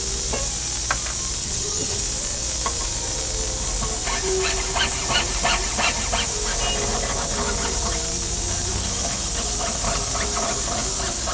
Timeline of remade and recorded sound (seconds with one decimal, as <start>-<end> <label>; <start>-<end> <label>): 0.0-1.4 recorded; 1.4-2.0 remade; 2.0-11.3 recorded